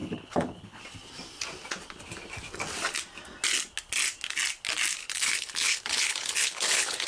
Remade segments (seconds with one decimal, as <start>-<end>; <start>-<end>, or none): 0.0-0.8; 5.0-7.1